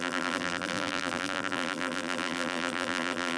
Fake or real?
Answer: fake